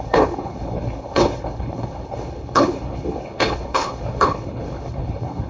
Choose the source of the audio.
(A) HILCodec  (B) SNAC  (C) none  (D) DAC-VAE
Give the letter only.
A